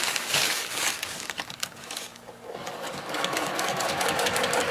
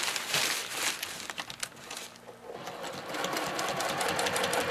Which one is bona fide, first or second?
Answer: second